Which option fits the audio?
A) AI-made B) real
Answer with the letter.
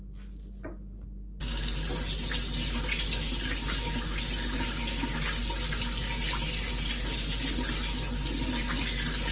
B